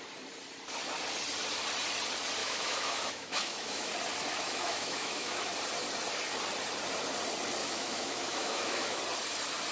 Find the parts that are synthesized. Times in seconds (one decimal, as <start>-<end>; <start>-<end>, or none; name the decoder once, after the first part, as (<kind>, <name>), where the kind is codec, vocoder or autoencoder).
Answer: 2.4-3.9 (autoencoder, DAC-VAE); 4.3-5.5; 7.6-9.0

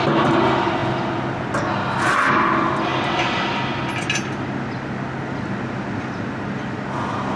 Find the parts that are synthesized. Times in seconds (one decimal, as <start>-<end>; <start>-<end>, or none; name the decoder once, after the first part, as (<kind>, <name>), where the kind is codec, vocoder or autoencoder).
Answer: none

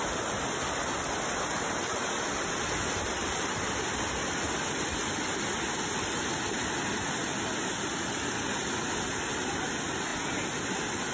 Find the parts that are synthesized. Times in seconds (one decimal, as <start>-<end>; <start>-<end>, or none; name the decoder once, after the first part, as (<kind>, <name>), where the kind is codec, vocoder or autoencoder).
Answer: none